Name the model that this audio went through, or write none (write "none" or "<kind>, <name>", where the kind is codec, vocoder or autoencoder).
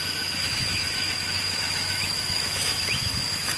autoencoder, DAC-VAE